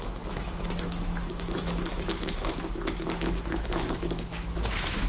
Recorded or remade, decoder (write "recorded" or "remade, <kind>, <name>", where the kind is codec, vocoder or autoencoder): remade, autoencoder, DAC-VAE